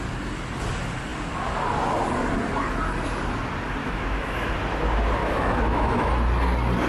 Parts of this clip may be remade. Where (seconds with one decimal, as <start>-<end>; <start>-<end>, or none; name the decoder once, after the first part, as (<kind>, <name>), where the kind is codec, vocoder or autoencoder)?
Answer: 3.8-4.5 (autoencoder, DAC-VAE); 5.2-6.1